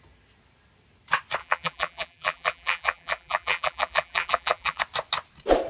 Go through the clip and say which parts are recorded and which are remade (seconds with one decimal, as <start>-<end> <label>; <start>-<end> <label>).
0.0-1.4 recorded; 1.4-4.8 remade; 4.8-5.7 recorded